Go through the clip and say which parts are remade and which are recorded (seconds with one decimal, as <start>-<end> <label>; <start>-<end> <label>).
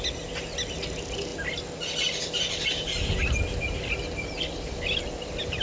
0.0-5.6 recorded